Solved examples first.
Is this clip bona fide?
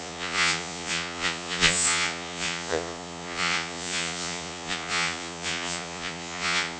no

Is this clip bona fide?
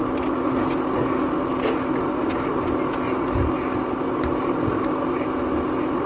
yes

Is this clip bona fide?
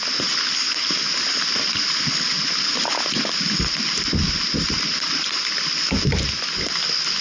yes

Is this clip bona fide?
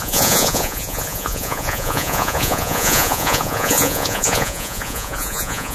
no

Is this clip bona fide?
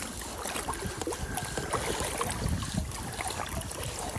yes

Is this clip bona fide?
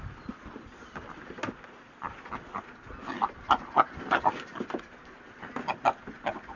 yes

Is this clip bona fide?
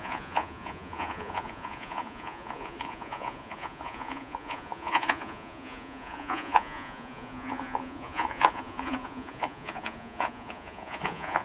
no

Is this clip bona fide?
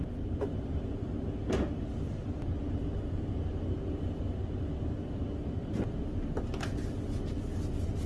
yes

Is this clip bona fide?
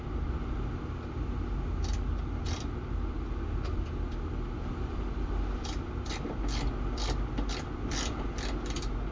yes